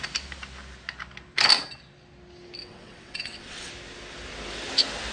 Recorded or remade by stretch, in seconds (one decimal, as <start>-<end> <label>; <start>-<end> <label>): 0.0-2.6 recorded; 2.6-3.7 remade; 3.7-5.1 recorded